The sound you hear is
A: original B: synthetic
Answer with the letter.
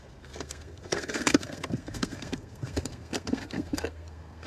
B